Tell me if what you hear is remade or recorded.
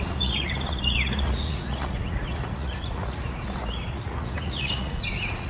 remade